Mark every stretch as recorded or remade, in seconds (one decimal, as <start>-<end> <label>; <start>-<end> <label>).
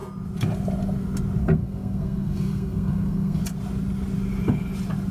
0.0-1.4 recorded; 1.4-3.4 remade; 3.4-5.1 recorded